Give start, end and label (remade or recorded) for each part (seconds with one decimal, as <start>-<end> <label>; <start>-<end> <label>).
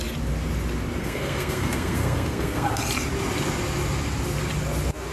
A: 0.0-1.0 recorded; 1.0-2.7 remade; 2.7-5.1 recorded